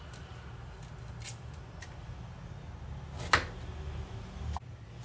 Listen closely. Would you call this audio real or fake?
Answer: real